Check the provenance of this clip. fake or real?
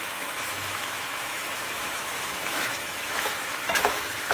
fake